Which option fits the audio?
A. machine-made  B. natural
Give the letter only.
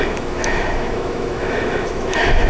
A